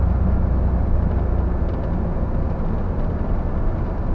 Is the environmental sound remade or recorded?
recorded